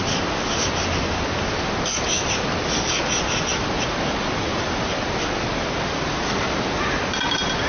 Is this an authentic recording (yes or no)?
yes